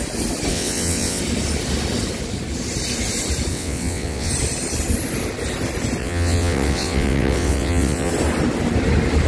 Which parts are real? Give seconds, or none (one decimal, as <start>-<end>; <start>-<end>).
0.0-0.5; 1.2-3.5; 4.3-6.0; 8.1-9.3